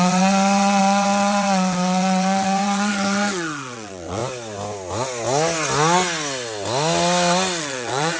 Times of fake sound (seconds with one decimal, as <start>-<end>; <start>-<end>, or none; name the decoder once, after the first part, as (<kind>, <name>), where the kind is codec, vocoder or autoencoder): 0.0-4.2 (vocoder, WaveNeXt); 7.6-8.2